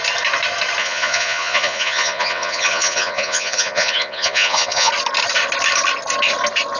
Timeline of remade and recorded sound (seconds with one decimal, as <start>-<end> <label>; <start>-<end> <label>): 0.0-0.8 recorded; 0.8-4.9 remade; 4.9-6.8 recorded